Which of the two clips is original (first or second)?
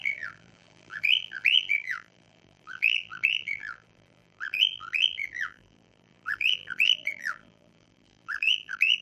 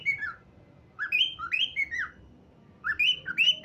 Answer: second